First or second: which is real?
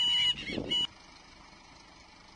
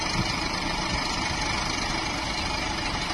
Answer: first